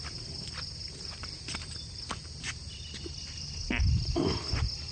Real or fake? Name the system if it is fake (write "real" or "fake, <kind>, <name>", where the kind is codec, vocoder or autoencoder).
real